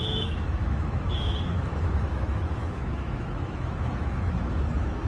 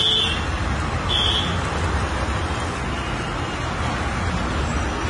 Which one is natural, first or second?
second